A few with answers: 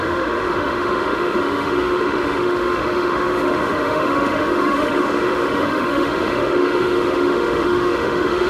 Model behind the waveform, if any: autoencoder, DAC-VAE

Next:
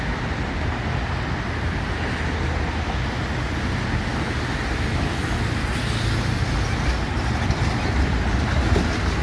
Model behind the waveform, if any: none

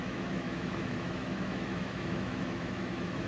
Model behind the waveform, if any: autoencoder, DAC-VAE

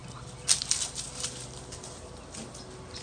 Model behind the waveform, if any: none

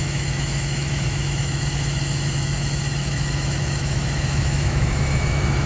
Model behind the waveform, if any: autoencoder, DAC-VAE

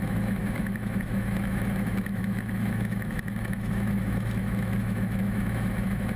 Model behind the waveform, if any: autoencoder, DAC-VAE